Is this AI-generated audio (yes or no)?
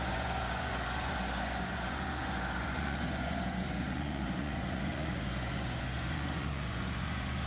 yes